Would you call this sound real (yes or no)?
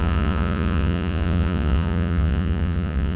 no